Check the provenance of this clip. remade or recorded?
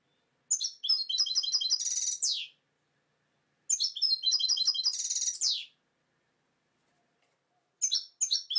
recorded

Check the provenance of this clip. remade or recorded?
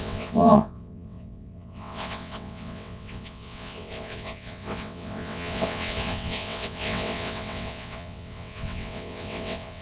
remade